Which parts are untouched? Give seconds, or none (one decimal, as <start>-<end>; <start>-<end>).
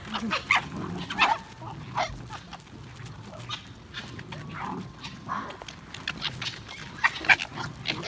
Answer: 0.0-8.1